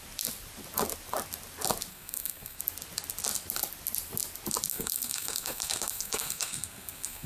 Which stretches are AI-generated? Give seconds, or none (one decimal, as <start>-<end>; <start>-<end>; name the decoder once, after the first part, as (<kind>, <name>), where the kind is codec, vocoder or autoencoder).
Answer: 1.9-2.6 (codec, SNAC); 4.7-7.3